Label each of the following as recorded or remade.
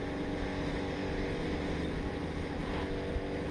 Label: recorded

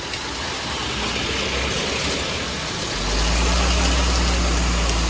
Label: recorded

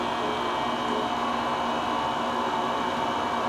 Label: recorded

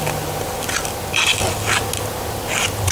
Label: recorded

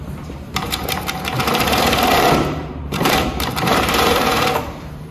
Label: remade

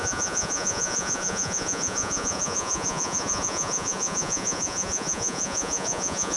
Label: remade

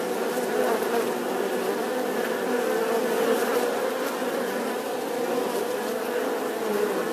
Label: recorded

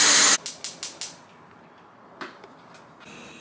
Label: recorded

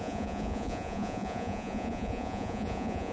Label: remade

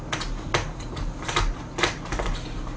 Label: recorded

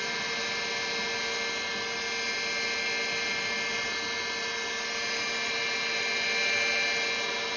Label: recorded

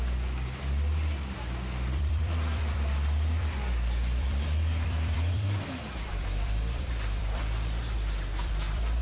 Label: remade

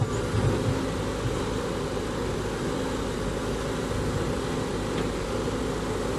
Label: recorded